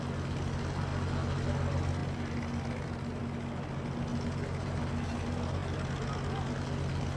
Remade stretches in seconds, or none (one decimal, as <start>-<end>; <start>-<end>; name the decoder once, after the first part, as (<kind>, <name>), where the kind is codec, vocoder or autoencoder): 4.1-4.8 (vocoder, BigVGAN v2)